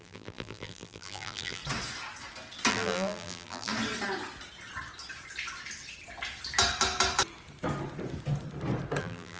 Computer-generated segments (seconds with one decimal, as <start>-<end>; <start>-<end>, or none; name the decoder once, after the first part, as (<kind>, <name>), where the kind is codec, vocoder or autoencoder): 0.0-1.6 (vocoder, BigVGAN v2); 2.7-3.7; 9.0-9.4